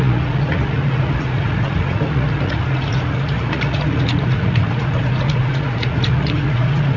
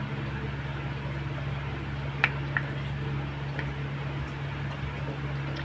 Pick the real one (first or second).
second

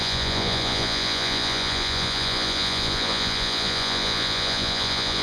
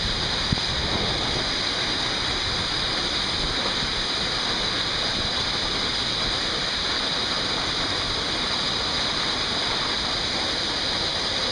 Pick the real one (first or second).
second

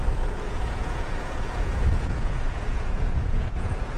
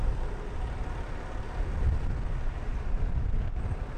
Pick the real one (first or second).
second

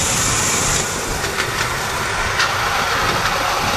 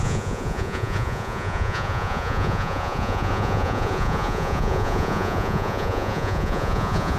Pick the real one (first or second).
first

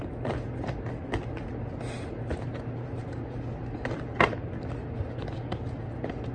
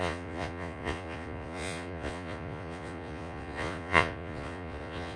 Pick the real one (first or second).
first